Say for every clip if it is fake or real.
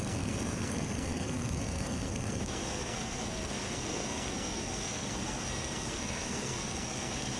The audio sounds fake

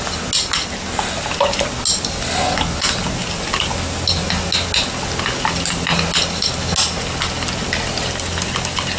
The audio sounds real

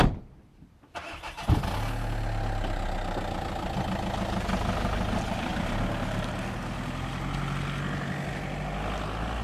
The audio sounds real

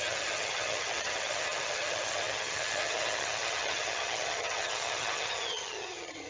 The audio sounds fake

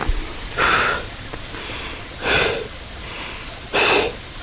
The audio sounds real